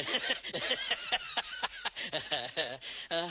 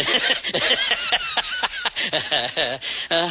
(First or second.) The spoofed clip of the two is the first